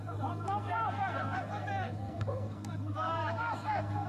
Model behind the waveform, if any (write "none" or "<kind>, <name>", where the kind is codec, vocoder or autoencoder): codec, SNAC